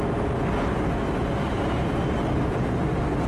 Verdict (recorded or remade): recorded